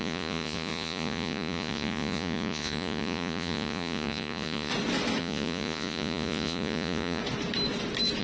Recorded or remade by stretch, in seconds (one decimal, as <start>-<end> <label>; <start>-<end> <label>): 0.0-4.7 remade; 4.7-5.2 recorded; 5.2-7.2 remade; 7.2-8.2 recorded